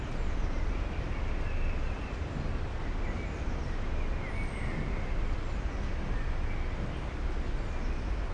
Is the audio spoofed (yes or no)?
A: no